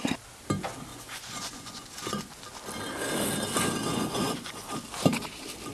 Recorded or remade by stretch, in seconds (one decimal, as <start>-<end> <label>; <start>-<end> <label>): 0.0-0.9 recorded; 0.9-2.4 remade; 2.4-3.9 recorded; 3.9-4.7 remade; 4.7-5.7 recorded